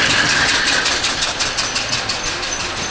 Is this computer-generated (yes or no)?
no